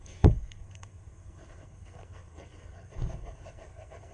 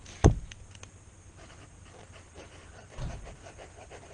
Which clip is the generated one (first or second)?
first